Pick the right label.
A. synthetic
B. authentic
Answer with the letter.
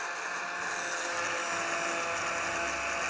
B